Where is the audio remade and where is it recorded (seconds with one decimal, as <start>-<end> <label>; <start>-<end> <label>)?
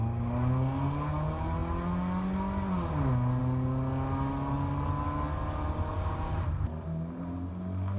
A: 0.0-5.9 recorded; 5.9-7.5 remade; 7.5-8.0 recorded